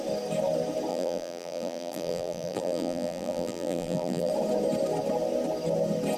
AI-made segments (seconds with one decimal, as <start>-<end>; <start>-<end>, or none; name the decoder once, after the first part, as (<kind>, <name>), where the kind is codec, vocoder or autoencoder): 0.9-4.3 (vocoder, BigVGAN v2)